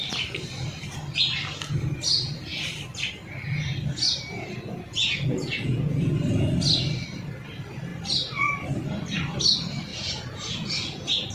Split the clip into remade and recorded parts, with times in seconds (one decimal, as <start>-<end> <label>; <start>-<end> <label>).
0.0-4.9 recorded; 4.9-6.1 remade; 6.1-9.9 recorded; 9.9-11.3 remade

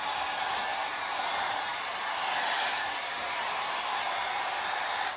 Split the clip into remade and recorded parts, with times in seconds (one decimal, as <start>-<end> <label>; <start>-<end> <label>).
0.0-0.7 recorded; 0.7-3.8 remade; 3.8-5.2 recorded

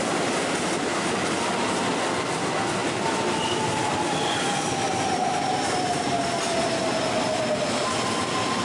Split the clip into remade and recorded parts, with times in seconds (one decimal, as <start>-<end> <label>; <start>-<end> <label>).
0.0-2.8 recorded; 2.8-6.2 remade; 6.2-8.6 recorded

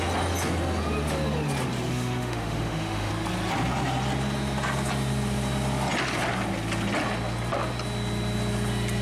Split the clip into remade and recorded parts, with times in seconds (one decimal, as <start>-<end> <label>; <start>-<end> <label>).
0.0-1.9 recorded; 1.9-3.1 remade; 3.1-9.0 recorded

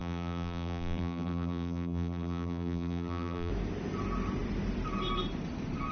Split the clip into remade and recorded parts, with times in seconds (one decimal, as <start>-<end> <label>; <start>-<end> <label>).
0.0-3.5 remade; 3.5-5.9 recorded

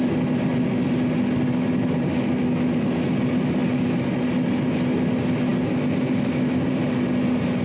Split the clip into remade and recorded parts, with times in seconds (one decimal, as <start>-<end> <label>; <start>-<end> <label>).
0.0-7.6 recorded